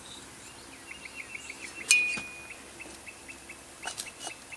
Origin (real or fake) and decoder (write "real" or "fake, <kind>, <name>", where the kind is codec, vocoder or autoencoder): real